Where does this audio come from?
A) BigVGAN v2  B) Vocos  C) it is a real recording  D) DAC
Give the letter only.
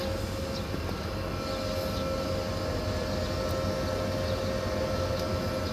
C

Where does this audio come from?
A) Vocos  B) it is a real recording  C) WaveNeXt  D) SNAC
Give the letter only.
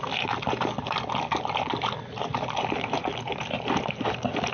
B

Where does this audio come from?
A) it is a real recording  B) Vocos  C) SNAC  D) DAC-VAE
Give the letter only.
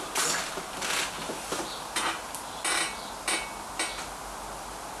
A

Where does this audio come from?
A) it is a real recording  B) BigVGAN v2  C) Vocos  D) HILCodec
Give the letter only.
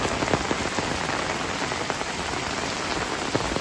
A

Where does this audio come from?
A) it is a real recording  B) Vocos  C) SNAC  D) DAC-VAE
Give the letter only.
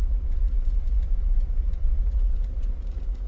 B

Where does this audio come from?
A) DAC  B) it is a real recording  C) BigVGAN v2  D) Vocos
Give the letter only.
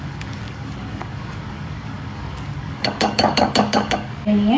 A